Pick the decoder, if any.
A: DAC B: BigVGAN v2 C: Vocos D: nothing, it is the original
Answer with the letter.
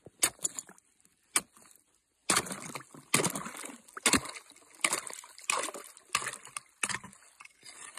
D